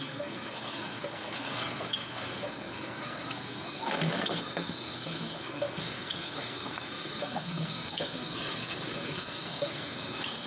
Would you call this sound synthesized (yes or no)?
yes